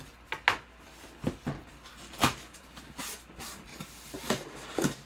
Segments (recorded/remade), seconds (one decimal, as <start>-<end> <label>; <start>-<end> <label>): 0.0-2.2 recorded; 2.2-3.0 remade; 3.0-3.7 recorded; 3.7-5.1 remade